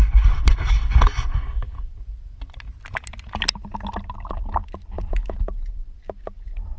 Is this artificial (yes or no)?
no